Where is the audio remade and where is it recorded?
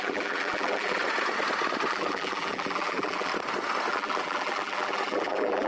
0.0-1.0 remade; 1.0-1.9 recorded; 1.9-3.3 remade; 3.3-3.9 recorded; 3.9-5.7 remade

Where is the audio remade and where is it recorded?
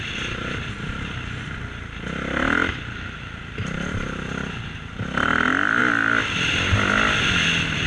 0.0-7.9 recorded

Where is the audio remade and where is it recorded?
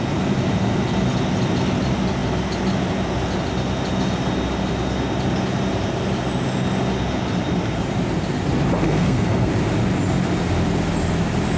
0.0-8.8 recorded; 8.8-9.5 remade; 9.5-11.6 recorded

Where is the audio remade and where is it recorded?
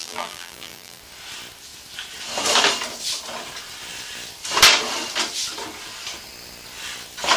0.0-1.0 remade; 1.0-7.4 recorded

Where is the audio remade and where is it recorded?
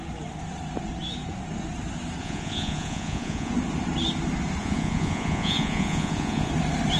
0.0-2.2 recorded; 2.2-3.5 remade; 3.5-4.6 recorded; 4.6-6.5 remade; 6.5-7.0 recorded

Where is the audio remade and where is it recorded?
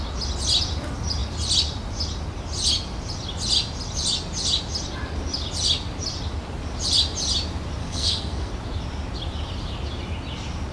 0.0-7.8 recorded; 7.8-8.5 remade; 8.5-10.7 recorded